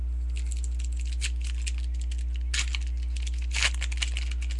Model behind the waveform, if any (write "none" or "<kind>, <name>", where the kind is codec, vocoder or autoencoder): none